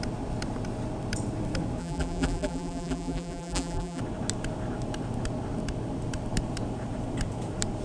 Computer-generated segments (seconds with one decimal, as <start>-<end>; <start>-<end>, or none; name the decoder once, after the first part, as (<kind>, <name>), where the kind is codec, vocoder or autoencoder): 1.8-4.0 (vocoder, BigVGAN v2)